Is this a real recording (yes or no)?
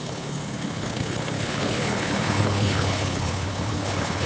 no